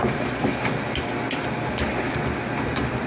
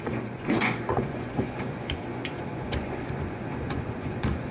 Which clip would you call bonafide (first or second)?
first